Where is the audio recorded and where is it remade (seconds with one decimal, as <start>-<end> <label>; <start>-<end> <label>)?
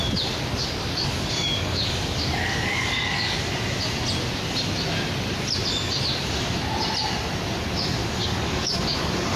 0.0-0.6 recorded; 0.6-3.4 remade; 3.4-8.0 recorded; 8.0-9.4 remade